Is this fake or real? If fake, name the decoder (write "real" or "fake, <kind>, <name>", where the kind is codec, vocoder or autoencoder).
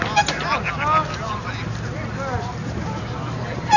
real